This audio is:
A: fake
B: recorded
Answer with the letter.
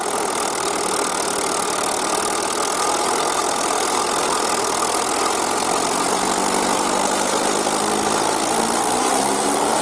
B